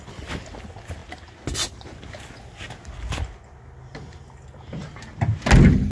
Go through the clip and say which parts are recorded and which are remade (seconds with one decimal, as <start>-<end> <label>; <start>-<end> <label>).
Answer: 0.0-5.9 recorded